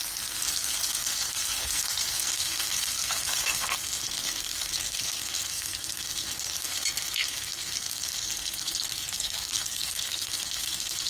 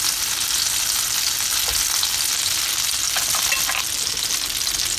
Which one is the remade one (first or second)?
first